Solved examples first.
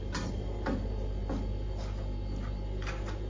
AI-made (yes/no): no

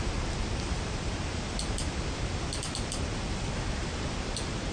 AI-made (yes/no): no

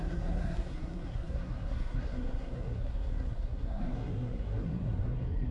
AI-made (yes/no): yes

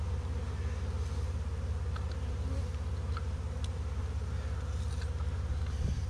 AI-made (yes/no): no